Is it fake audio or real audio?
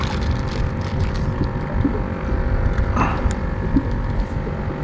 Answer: real